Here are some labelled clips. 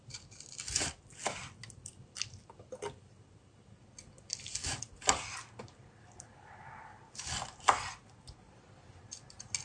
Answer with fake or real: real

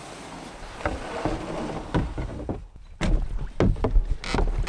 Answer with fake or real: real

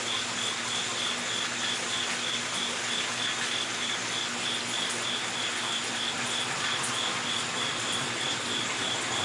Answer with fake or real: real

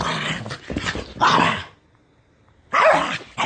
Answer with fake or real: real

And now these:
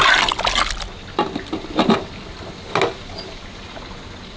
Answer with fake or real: real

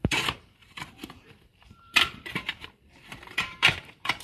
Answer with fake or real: fake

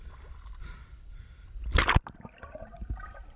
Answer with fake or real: real